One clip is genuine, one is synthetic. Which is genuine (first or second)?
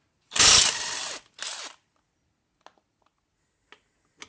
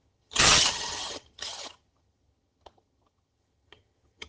first